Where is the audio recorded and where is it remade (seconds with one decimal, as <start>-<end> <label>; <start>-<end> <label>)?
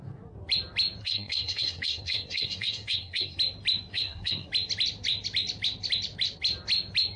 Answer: 0.0-1.0 recorded; 1.0-3.4 remade; 3.4-3.9 recorded; 3.9-4.5 remade; 4.5-7.2 recorded